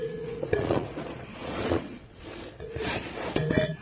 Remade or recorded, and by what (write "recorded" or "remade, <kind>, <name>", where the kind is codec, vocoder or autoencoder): remade, vocoder, Vocos